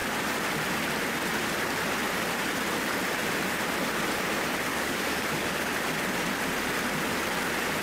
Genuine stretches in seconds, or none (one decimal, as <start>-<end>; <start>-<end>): 0.0-4.7; 5.7-7.8